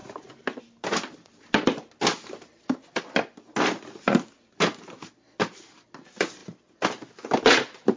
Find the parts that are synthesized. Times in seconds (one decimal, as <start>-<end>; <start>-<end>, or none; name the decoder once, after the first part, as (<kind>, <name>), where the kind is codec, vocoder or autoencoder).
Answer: none